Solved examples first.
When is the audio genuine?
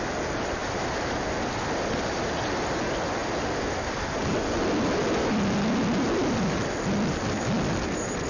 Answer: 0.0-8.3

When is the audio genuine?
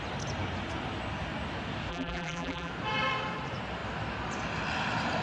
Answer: 0.0-1.9; 2.7-5.2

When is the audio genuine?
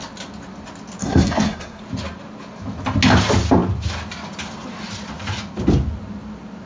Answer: 0.0-1.0; 1.8-6.7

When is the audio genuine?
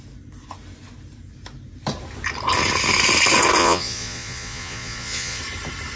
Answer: 0.0-3.6; 5.4-6.0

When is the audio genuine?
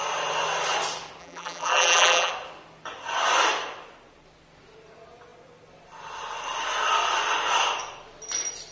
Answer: 0.0-1.2; 2.3-8.7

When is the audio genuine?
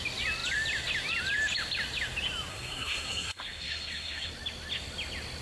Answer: 0.0-2.5; 4.3-5.4